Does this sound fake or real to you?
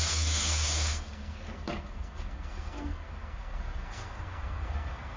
fake